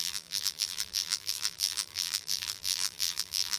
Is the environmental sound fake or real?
fake